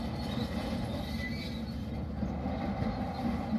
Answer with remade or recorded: recorded